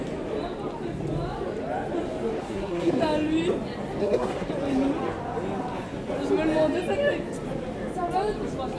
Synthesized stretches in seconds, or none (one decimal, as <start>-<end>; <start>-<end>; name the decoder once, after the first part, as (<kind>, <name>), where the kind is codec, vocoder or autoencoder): 2.4-3.0 (codec, SNAC); 4.0-4.5